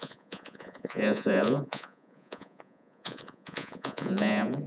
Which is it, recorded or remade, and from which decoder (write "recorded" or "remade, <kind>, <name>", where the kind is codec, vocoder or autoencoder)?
remade, vocoder, Vocos